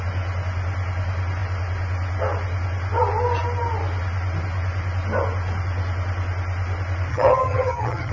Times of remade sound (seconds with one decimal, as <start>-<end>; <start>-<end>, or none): 7.1-8.1